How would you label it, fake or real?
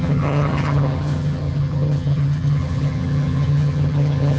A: fake